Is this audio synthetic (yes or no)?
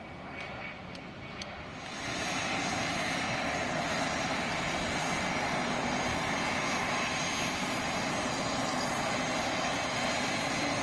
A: no